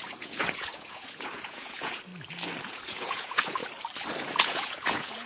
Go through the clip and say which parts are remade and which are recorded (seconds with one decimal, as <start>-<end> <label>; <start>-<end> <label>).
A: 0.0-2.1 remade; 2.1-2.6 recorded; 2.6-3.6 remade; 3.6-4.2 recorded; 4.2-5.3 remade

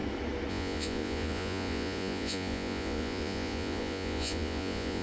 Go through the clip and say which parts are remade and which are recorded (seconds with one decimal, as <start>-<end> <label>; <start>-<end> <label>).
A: 0.0-0.5 recorded; 0.5-5.0 remade

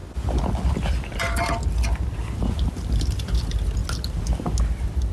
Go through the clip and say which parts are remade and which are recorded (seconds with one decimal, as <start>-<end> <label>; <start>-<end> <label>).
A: 0.0-5.1 recorded

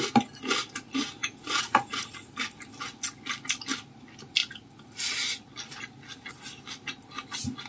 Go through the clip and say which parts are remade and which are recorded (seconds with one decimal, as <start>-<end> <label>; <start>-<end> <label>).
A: 0.0-1.2 recorded; 1.2-2.3 remade; 2.3-7.7 recorded

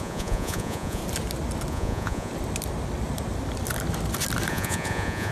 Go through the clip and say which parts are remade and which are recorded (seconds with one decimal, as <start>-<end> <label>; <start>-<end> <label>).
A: 0.0-1.0 remade; 1.0-1.7 recorded; 1.7-2.3 remade; 2.3-4.5 recorded; 4.5-5.3 remade